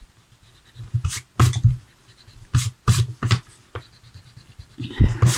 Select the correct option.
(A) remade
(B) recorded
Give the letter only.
B